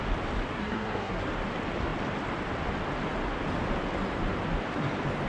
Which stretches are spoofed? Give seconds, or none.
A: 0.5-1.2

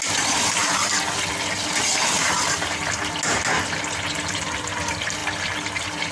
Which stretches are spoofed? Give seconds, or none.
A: none